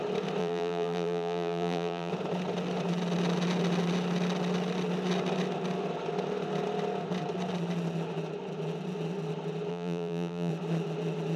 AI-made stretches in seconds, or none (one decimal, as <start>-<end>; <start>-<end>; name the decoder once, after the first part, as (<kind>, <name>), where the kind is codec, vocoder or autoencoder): 0.4-2.1 (vocoder, BigVGAN v2); 9.7-10.5

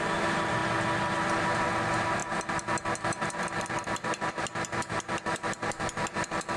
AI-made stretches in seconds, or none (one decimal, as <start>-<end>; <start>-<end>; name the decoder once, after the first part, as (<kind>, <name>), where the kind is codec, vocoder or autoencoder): 0.0-0.6 (vocoder, BigVGAN v2); 1.1-6.6